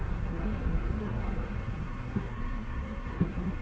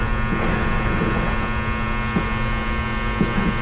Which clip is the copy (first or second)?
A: first